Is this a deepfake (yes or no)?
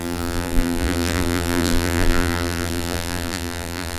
yes